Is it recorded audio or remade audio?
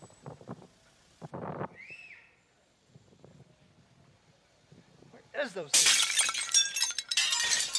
remade